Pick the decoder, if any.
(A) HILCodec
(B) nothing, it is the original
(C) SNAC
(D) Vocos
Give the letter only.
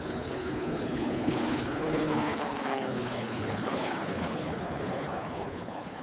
A